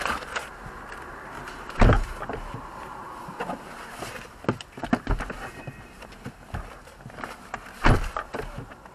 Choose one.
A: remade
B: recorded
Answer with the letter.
B